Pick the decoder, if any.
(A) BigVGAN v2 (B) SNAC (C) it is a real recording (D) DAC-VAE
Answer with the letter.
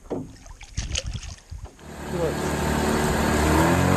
C